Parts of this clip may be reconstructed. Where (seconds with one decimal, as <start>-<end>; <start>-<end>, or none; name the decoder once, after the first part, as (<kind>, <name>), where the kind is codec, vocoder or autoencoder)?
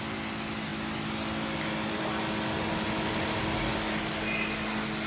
none